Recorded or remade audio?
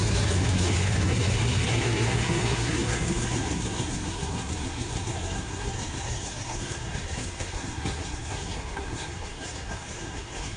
remade